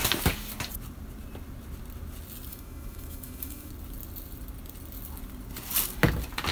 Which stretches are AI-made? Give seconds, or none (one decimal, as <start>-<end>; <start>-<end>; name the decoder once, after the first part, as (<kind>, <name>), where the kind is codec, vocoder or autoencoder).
2.5-3.7 (autoencoder, DAC-VAE)